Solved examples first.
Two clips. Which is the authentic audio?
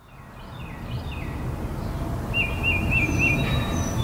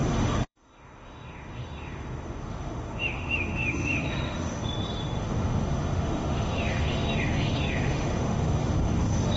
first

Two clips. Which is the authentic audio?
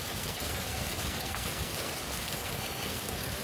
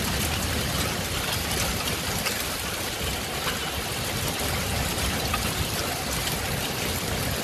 second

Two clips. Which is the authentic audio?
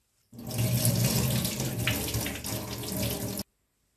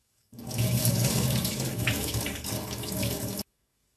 first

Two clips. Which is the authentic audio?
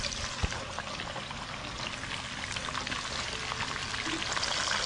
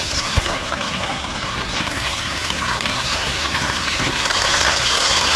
first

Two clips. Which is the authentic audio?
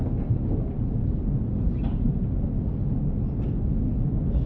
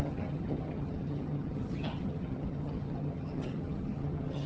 first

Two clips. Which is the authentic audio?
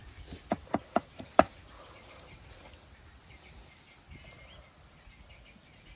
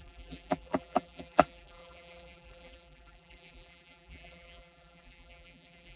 first